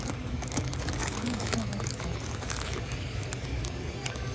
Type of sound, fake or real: fake